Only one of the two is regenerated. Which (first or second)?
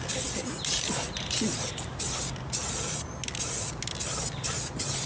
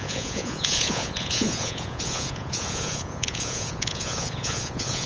second